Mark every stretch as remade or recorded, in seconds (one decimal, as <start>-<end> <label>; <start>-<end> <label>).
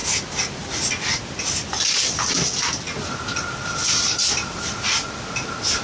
0.0-5.8 recorded